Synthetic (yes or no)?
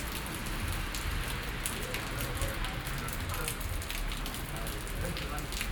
no